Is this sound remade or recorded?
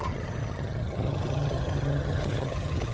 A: remade